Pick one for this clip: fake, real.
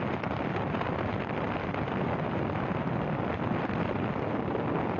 real